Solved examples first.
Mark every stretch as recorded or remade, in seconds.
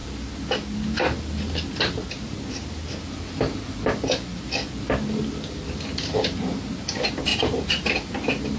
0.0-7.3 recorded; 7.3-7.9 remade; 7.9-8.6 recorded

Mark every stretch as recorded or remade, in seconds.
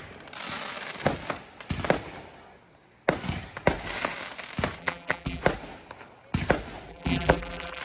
0.0-4.8 recorded; 4.8-5.4 remade; 5.4-6.9 recorded; 6.9-7.8 remade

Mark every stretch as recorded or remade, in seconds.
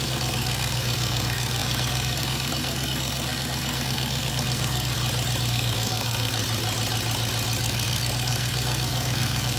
0.0-5.0 remade; 5.0-5.5 recorded; 5.5-6.4 remade; 6.4-7.6 recorded; 7.6-9.6 remade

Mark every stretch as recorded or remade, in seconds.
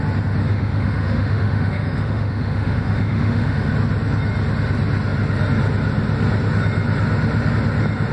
0.0-0.5 recorded; 0.5-3.7 remade; 3.7-8.1 recorded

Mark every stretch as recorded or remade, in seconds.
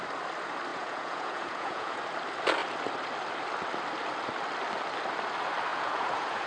0.0-0.7 recorded; 0.7-2.0 remade; 2.0-5.7 recorded; 5.7-6.5 remade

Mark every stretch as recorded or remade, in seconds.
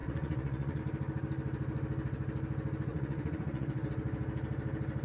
0.0-0.8 remade; 0.8-2.9 recorded; 2.9-3.9 remade; 3.9-5.0 recorded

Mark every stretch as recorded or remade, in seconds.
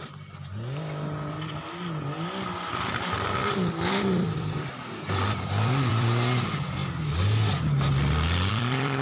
0.0-6.8 remade; 6.8-8.5 recorded; 8.5-9.0 remade